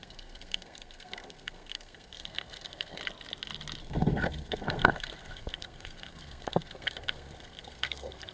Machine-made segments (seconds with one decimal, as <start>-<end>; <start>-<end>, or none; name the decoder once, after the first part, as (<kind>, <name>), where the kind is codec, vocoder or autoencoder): 0.0-3.0 (codec, SNAC); 3.8-8.3